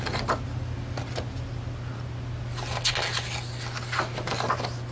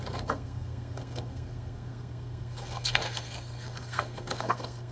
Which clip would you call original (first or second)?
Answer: first